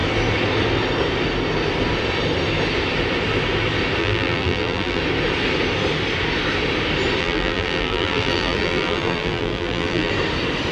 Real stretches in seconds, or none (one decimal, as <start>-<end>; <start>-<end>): 0.0-4.0; 5.0-7.2; 10.1-10.7